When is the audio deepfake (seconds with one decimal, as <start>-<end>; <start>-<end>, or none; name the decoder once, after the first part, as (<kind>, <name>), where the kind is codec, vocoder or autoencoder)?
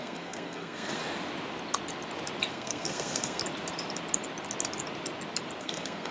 0.0-1.0 (codec, SNAC); 2.5-3.4; 5.6-6.1